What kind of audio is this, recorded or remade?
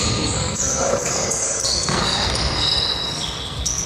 remade